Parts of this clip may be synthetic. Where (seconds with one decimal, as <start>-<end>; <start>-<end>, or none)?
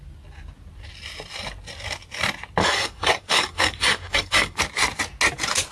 2.6-4.6